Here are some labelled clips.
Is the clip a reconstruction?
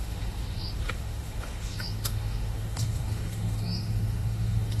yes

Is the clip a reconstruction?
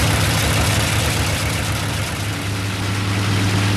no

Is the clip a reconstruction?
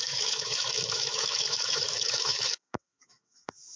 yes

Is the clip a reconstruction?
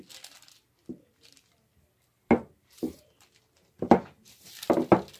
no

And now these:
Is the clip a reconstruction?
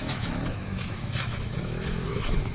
yes